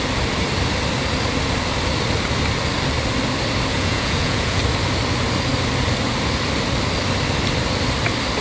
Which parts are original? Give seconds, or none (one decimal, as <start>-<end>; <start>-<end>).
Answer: 0.0-3.7; 4.6-8.4